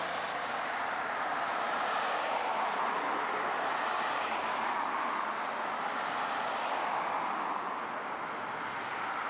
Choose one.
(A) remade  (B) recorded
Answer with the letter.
B